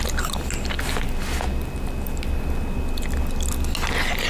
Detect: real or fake real